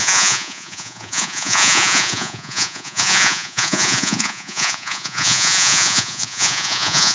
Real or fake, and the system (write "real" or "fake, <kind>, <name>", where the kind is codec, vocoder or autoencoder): fake, vocoder, Vocos